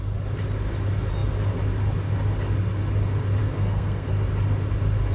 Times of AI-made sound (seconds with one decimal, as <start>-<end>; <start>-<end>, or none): 3.4-4.1